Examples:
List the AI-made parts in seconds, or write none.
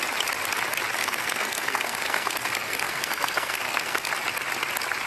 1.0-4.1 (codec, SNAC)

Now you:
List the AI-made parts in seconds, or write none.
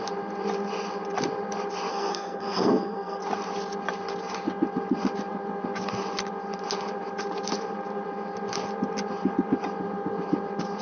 1.9-3.2 (codec, SNAC)